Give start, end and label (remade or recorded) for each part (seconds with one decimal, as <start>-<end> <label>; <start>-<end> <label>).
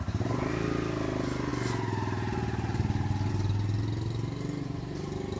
0.0-5.4 recorded